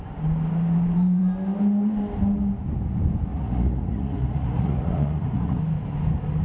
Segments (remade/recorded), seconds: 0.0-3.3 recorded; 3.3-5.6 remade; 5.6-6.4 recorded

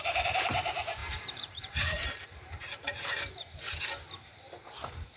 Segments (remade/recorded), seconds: 0.0-5.2 remade

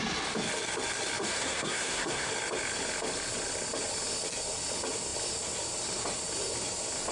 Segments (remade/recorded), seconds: 0.0-1.2 recorded; 1.2-2.3 remade; 2.3-7.1 recorded